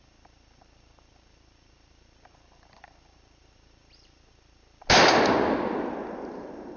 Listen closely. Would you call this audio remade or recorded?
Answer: recorded